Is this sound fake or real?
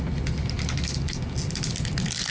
real